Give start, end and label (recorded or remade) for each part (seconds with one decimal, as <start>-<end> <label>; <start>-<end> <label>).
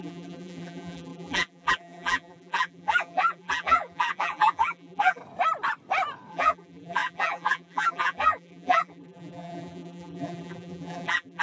0.0-5.2 remade; 5.2-6.3 recorded; 6.3-11.4 remade